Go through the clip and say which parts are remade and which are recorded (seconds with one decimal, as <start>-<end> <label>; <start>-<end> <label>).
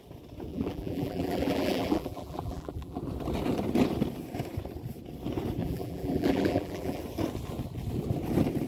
0.0-0.5 recorded; 0.5-3.0 remade; 3.0-5.6 recorded; 5.6-7.0 remade; 7.0-8.7 recorded